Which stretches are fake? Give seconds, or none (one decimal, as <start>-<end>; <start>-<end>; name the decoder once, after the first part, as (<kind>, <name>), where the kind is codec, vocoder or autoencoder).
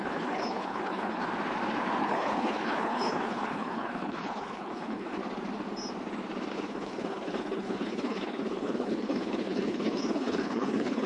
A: 0.0-1.2 (codec, HILCodec); 2.0-5.2; 6.5-11.1